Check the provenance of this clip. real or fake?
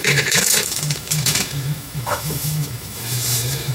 fake